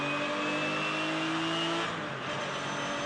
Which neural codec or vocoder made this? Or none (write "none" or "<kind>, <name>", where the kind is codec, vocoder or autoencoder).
none